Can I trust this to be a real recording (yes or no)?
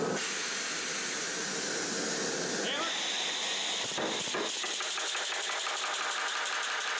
yes